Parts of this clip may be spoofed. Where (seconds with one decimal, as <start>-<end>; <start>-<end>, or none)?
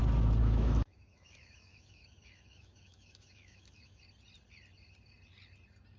0.4-4.0